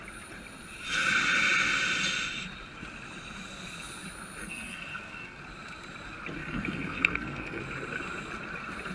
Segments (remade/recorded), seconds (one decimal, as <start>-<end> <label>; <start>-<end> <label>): 0.0-4.4 recorded; 4.4-5.4 remade; 5.4-6.4 recorded; 6.4-7.6 remade; 7.6-8.9 recorded